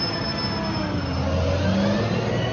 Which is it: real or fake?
real